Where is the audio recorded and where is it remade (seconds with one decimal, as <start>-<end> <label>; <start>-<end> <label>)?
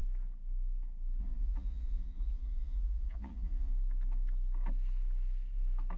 0.0-1.2 recorded; 1.2-3.7 remade; 3.7-6.0 recorded